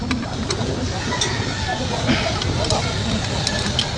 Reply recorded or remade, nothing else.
recorded